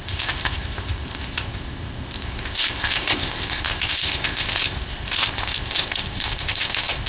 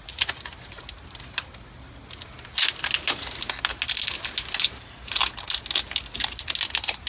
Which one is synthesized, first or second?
first